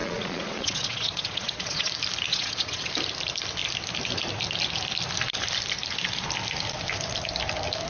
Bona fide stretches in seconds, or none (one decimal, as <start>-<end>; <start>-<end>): 1.9-2.3; 2.9-7.9